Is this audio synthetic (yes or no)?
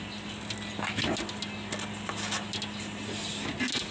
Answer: no